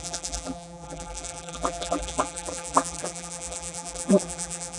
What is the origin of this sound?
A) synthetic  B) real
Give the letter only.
A